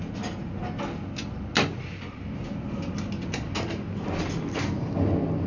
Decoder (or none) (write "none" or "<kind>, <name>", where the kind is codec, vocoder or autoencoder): none